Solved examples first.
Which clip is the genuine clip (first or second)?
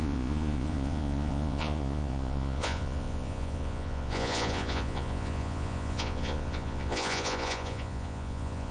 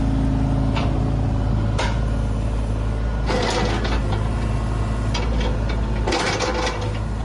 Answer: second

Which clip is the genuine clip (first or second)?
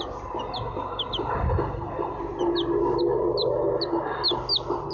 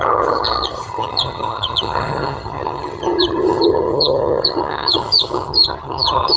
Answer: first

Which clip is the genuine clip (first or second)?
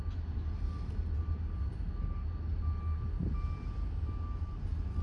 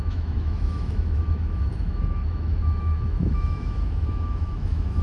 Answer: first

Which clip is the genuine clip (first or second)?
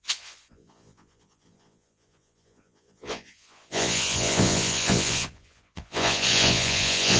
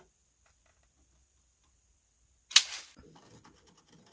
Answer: second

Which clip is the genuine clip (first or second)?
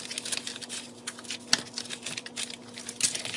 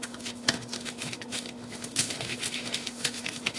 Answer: first